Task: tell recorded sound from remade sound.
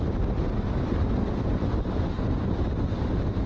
recorded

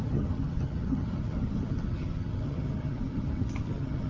remade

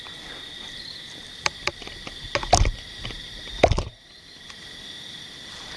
recorded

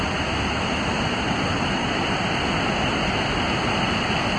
recorded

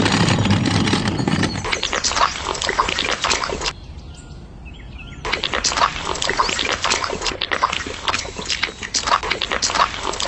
recorded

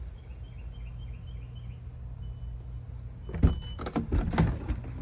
recorded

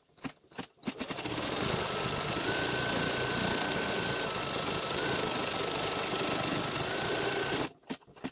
recorded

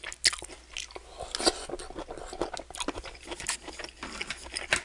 recorded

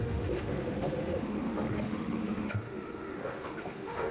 remade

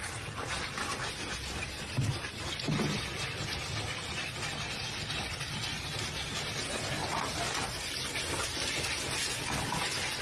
recorded